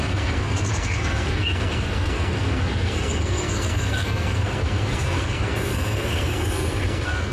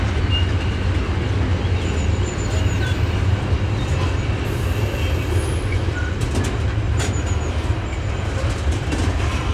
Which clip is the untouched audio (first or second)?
second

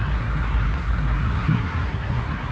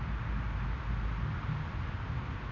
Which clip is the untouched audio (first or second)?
second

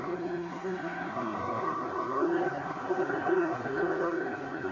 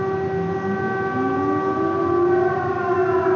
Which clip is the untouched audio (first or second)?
second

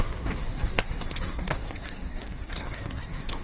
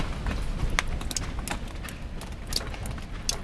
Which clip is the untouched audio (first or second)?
second